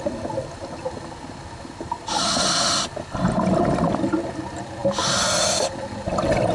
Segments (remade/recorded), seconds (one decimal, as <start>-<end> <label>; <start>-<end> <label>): 0.0-6.5 recorded